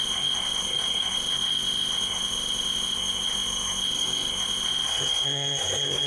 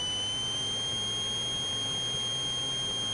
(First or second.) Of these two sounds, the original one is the second